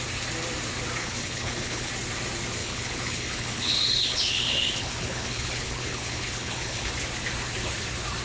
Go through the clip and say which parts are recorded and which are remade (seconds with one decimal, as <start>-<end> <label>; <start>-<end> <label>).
0.0-1.0 recorded; 1.0-1.9 remade; 1.9-2.6 recorded; 2.6-6.9 remade; 6.9-8.2 recorded